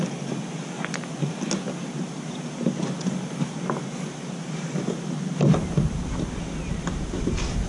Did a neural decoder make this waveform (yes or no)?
no